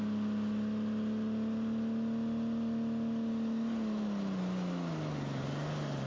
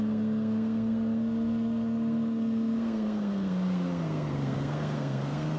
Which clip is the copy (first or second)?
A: second